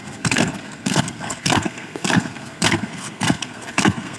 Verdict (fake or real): fake